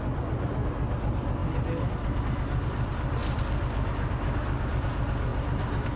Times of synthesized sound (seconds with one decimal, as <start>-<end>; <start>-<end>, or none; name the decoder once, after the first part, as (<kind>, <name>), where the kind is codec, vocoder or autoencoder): none